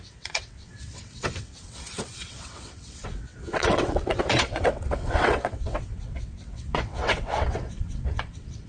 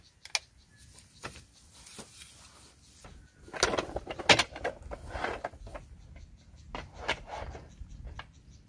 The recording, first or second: second